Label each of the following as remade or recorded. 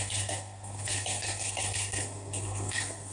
remade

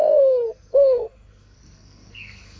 remade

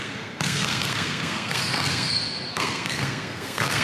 remade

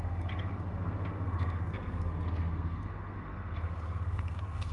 remade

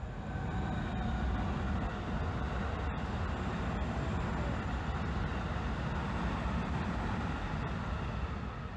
recorded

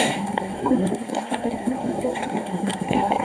remade